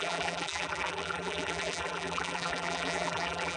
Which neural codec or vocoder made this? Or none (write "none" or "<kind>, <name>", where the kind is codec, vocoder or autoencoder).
vocoder, BigVGAN v2